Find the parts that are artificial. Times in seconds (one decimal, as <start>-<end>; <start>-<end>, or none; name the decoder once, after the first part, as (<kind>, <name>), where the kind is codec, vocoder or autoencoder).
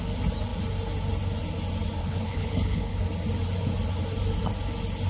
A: 2.0-3.0 (codec, HILCodec)